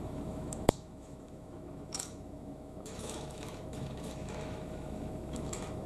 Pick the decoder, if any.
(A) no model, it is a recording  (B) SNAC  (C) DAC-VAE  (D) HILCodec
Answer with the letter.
C